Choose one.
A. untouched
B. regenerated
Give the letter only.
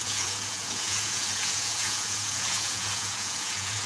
B